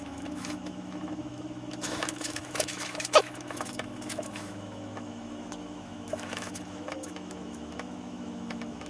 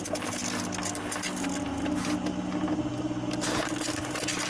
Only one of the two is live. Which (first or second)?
second